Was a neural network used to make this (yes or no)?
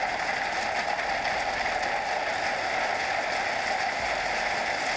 no